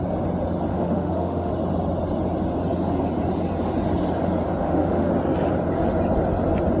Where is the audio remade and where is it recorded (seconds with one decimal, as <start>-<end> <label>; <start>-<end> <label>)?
0.0-0.7 recorded; 0.7-1.5 remade; 1.5-4.6 recorded; 4.6-5.1 remade; 5.1-6.8 recorded